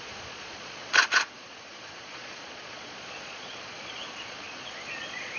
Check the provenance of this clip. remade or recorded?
remade